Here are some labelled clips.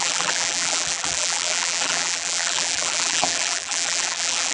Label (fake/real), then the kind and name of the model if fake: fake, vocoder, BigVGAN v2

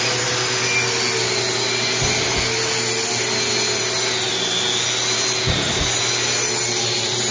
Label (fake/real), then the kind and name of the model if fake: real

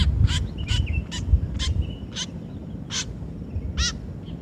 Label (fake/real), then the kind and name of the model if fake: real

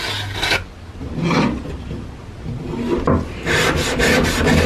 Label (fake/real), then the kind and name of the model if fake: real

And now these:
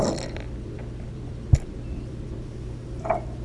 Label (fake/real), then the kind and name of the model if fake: fake, vocoder, BigVGAN v2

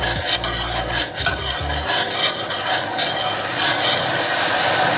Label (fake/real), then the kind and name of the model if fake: real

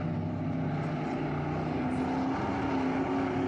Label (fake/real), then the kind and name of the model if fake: real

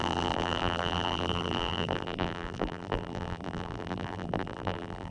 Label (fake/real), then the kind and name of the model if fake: fake, vocoder, BigVGAN v2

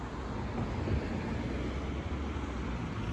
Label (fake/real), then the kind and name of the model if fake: real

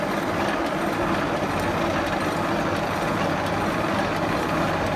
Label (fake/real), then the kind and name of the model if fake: real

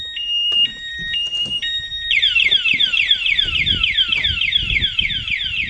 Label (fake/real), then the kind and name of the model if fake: fake, vocoder, BigVGAN v2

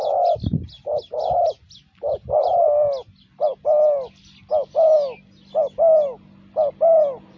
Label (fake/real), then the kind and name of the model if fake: real